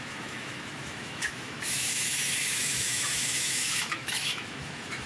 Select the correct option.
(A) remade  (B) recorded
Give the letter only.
A